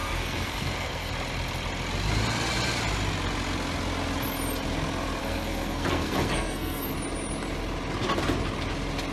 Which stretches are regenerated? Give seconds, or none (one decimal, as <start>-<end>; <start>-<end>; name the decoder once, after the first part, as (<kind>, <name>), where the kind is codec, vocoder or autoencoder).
0.0-1.1 (codec, SNAC); 5.2-6.9